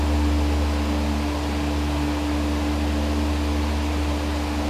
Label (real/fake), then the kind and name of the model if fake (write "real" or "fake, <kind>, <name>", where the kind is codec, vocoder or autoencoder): real